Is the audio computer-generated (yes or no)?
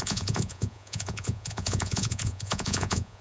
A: yes